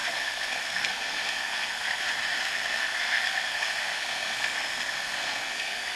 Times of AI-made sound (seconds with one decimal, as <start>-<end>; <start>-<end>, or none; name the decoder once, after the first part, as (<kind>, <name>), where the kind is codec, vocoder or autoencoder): 0.0-2.0 (codec, SNAC); 2.4-6.0